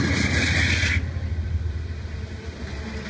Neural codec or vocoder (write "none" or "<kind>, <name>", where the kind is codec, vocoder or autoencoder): none